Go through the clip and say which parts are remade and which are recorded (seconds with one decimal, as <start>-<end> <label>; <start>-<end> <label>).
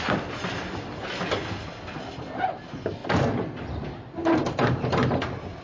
0.0-5.6 recorded